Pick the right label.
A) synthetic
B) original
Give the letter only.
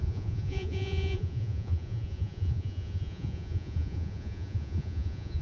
A